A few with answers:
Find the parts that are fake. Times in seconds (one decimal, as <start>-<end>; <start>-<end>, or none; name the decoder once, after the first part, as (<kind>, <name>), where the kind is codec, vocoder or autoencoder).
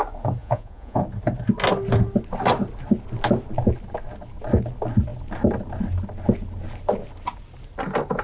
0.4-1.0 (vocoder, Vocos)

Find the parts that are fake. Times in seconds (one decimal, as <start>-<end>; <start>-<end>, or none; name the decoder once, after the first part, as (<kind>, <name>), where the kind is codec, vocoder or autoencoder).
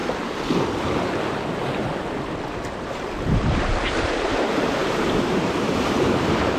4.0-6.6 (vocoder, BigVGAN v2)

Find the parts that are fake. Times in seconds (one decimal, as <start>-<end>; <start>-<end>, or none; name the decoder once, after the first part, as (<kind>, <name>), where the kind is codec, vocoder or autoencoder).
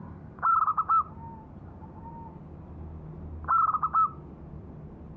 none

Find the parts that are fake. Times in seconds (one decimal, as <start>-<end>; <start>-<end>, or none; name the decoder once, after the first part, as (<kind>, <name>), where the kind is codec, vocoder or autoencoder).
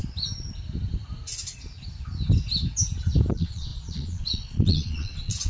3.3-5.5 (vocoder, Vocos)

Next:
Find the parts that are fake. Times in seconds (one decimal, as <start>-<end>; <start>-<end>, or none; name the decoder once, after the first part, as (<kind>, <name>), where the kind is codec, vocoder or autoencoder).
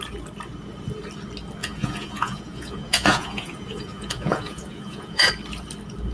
1.6-5.3 (vocoder, Vocos)